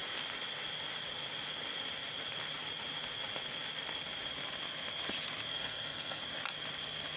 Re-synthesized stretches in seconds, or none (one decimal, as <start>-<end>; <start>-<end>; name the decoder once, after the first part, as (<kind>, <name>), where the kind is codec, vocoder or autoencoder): 5.5-6.2 (codec, SNAC)